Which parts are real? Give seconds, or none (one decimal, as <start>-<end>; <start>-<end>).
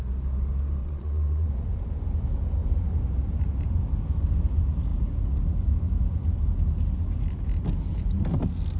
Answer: 0.0-0.8; 1.5-8.8